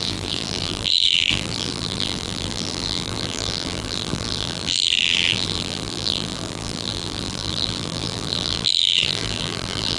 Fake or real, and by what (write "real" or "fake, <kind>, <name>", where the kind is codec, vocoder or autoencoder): fake, vocoder, BigVGAN v2